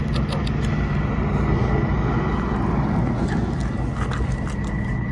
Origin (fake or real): real